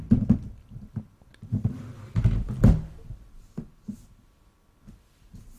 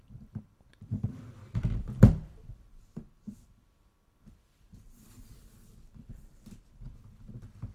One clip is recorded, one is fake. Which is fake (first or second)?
second